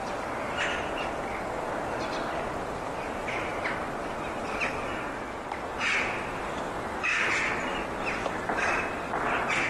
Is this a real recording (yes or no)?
yes